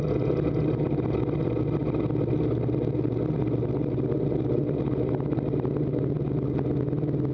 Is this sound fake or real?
real